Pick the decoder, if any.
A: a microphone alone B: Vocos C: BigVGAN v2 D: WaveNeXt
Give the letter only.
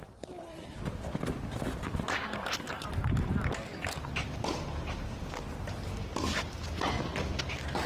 A